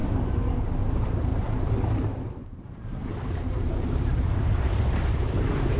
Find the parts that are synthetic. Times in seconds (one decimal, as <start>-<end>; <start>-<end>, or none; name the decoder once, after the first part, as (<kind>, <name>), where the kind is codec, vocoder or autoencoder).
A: 1.3-4.8 (vocoder, BigVGAN v2)